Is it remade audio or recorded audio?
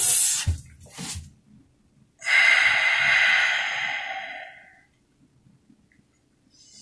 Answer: recorded